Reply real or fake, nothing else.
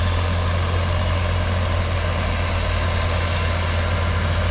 real